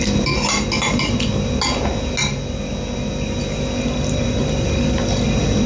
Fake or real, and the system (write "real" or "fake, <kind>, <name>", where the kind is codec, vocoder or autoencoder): real